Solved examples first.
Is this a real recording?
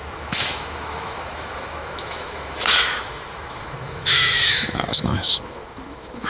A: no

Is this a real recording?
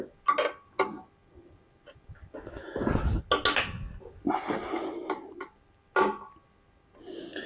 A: yes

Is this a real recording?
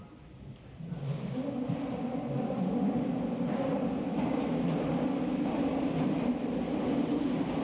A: yes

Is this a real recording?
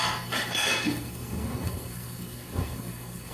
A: no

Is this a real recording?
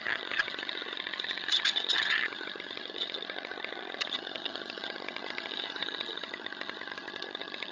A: no